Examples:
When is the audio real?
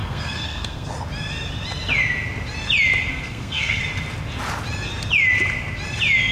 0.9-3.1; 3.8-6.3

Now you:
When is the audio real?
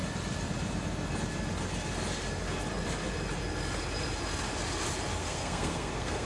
0.0-5.2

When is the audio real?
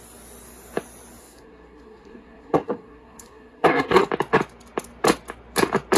0.0-1.2; 4.1-6.0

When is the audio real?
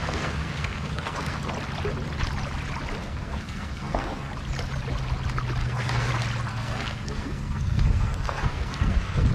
1.5-3.0; 4.3-5.6; 6.1-6.5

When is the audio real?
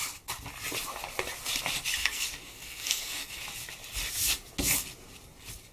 0.0-2.0; 3.4-5.7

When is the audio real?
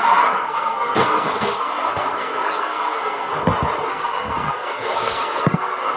3.3-3.9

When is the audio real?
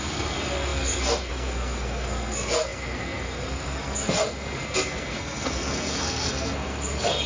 none